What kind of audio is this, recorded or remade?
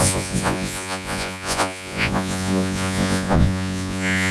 remade